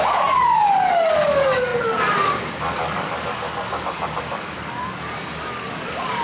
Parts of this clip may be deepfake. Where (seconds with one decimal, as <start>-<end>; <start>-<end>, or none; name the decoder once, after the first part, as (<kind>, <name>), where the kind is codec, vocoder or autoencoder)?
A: 0.0-6.2 (codec, DAC)